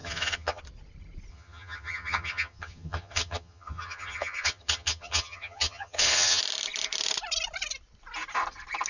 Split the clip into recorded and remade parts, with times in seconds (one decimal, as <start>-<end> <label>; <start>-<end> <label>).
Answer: 0.0-0.6 remade; 0.6-1.3 recorded; 1.3-6.4 remade; 6.4-8.9 recorded